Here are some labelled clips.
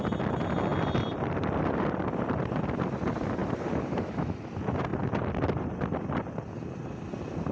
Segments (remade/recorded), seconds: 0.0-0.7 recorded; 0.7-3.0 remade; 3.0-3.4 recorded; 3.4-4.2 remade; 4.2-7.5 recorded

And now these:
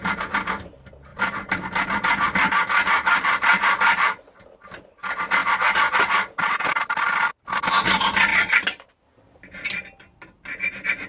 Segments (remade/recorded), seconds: 0.0-11.1 recorded

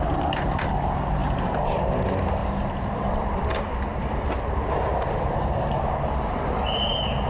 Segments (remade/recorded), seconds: 0.0-1.2 recorded; 1.2-2.0 remade; 2.0-2.4 recorded; 2.4-3.4 remade; 3.4-3.9 recorded; 3.9-7.3 remade